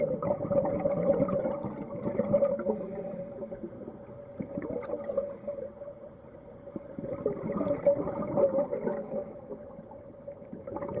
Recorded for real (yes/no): yes